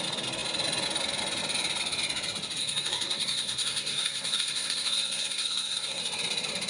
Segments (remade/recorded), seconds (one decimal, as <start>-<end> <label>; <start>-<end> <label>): 0.0-2.6 recorded; 2.6-6.0 remade; 6.0-6.7 recorded